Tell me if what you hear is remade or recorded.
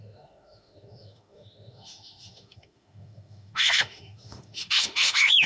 remade